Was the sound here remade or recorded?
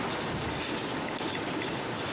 recorded